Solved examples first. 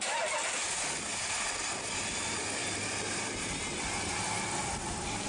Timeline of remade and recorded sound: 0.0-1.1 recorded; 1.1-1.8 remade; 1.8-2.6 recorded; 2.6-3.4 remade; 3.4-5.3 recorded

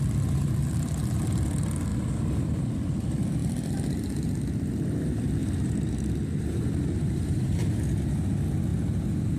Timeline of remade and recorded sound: 0.0-1.9 recorded; 1.9-2.8 remade; 2.8-5.4 recorded; 5.4-7.8 remade; 7.8-9.4 recorded

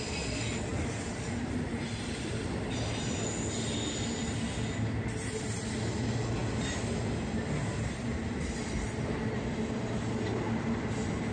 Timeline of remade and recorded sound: 0.0-11.3 recorded

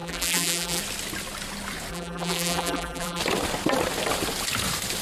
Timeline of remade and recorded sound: 0.0-0.8 remade; 0.8-1.9 recorded; 1.9-3.2 remade; 3.2-5.0 recorded